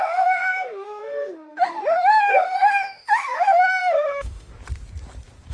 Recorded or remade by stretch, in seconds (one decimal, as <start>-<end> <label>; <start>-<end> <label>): 0.0-4.5 remade; 4.5-5.5 recorded